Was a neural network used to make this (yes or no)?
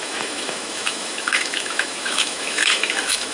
yes